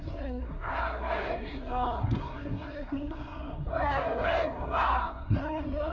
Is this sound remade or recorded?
remade